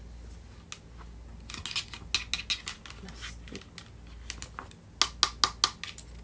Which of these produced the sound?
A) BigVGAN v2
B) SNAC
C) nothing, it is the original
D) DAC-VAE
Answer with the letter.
C